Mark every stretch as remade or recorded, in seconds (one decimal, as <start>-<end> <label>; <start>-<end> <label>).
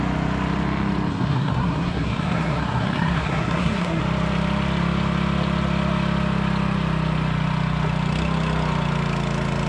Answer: 0.0-1.1 recorded; 1.1-4.0 remade; 4.0-9.7 recorded